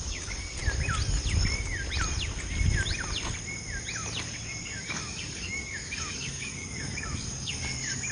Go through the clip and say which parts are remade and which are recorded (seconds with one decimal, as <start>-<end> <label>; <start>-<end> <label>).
0.0-0.6 remade; 0.6-4.6 recorded; 4.6-8.1 remade